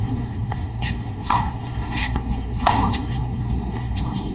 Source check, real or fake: fake